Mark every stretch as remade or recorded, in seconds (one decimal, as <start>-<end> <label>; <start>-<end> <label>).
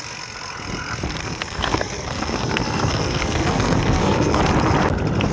0.0-1.2 recorded; 1.2-4.4 remade; 4.4-5.3 recorded